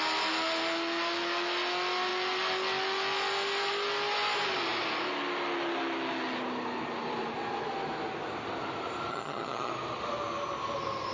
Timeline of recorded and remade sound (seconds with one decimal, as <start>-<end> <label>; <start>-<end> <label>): 0.0-9.1 recorded; 9.1-9.7 remade; 9.7-11.1 recorded